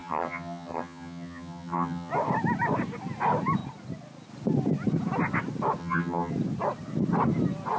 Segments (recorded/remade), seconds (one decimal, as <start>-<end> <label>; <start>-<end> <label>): 0.0-2.1 remade; 2.1-5.8 recorded; 5.8-6.3 remade; 6.3-7.8 recorded